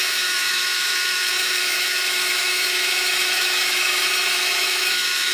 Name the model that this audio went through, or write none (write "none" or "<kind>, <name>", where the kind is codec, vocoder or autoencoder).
autoencoder, DAC-VAE